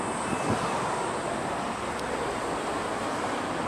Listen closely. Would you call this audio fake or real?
real